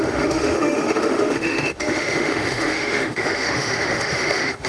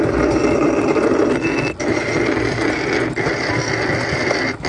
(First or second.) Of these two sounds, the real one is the second